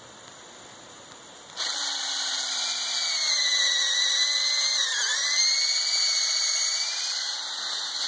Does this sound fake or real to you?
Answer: real